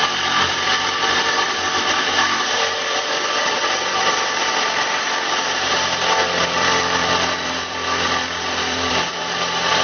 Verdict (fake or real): fake